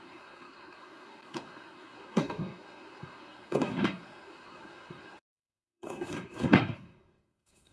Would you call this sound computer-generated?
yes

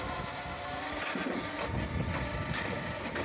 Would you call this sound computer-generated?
no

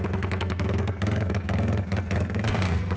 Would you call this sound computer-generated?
yes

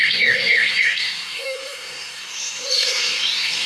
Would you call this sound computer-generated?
yes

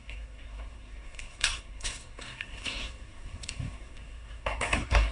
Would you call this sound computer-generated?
yes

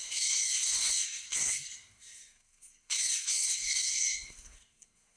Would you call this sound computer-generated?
yes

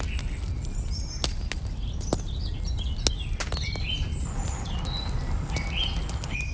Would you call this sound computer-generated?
no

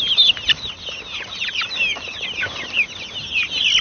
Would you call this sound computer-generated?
no